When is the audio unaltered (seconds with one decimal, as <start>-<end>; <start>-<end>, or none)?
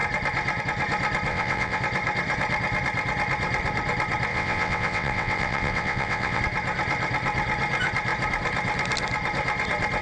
0.0-1.3; 1.8-4.3; 6.4-10.0